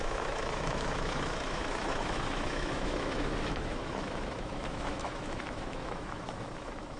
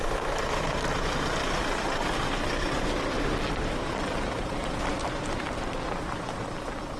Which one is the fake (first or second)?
first